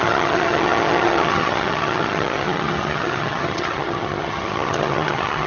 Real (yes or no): no